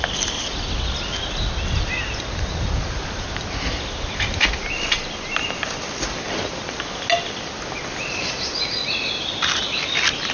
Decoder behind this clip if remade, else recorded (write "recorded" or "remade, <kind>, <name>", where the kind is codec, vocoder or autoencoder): recorded